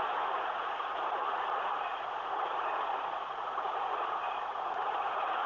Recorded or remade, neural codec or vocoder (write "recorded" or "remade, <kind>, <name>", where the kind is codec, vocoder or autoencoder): remade, vocoder, Vocos